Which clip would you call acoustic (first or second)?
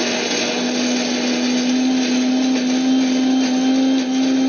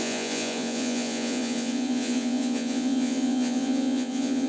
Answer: first